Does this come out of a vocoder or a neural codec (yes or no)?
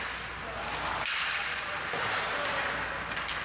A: no